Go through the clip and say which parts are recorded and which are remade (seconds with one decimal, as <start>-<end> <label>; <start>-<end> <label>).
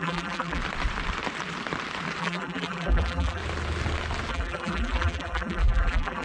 0.0-0.6 remade; 0.6-2.2 recorded; 2.2-3.4 remade; 3.4-4.3 recorded; 4.3-6.2 remade